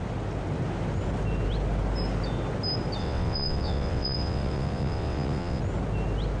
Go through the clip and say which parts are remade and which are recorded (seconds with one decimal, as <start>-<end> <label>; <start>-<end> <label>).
0.0-3.0 recorded; 3.0-5.6 remade; 5.6-6.4 recorded